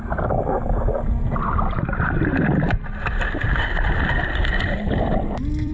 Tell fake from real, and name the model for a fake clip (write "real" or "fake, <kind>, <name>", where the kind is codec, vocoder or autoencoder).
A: fake, vocoder, BigVGAN v2